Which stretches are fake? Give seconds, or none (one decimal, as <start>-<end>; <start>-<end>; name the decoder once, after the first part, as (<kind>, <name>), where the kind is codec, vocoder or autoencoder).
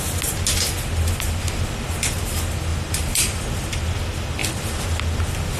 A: 2.7-3.7 (vocoder, BigVGAN v2)